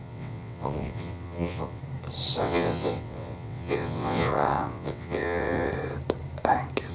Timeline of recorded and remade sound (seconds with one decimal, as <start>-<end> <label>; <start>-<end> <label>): 0.0-1.8 remade; 1.8-2.4 recorded; 2.4-5.7 remade; 5.7-6.9 recorded